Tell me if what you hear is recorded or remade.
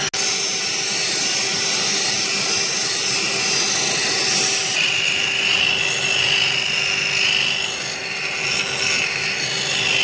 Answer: recorded